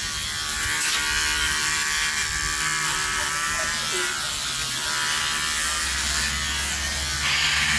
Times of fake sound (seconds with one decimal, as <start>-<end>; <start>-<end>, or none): none